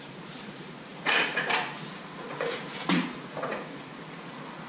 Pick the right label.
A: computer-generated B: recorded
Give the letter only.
A